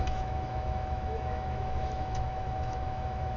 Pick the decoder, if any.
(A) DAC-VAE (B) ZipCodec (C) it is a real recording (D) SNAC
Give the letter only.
A